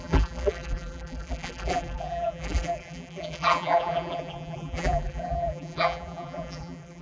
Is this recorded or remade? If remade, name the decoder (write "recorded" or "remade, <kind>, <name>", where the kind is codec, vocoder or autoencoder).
remade, vocoder, BigVGAN v2